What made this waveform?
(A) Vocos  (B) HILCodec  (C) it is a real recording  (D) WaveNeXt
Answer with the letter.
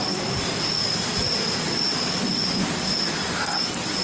C